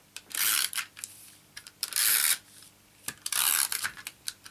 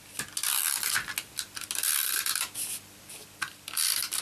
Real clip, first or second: second